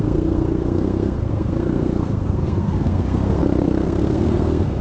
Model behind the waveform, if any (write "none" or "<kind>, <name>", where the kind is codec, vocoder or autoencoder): codec, SNAC